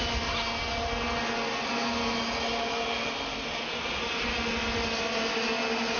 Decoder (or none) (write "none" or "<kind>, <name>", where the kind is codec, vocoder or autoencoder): none